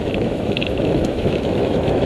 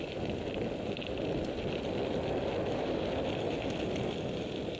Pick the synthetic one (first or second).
first